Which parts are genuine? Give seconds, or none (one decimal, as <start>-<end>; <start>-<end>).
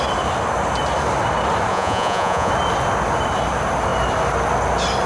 0.0-1.7; 2.5-5.1